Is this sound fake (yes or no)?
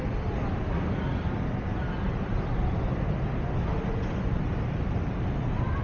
no